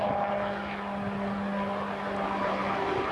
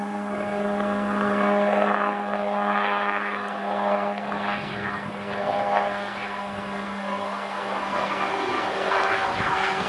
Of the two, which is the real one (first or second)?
first